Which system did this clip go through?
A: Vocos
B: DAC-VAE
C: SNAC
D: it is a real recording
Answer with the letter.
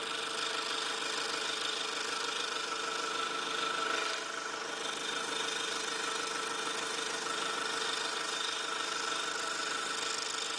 D